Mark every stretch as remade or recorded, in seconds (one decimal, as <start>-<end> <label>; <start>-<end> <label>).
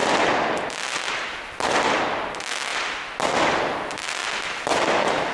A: 0.0-5.3 recorded